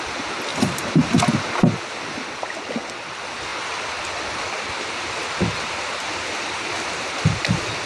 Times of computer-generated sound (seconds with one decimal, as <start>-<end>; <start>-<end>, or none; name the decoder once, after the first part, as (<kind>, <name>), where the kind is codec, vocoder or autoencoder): 0.5-1.2 (vocoder, BigVGAN v2)